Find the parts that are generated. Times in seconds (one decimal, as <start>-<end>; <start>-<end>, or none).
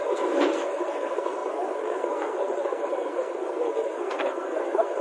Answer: 0.0-5.0